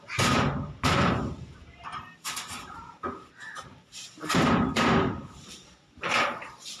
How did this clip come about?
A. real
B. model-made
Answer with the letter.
B